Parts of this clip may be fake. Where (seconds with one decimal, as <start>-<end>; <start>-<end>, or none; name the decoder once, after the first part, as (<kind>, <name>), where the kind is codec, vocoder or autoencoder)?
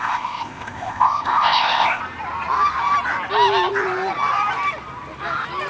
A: 0.0-2.0 (codec, ZipCodec)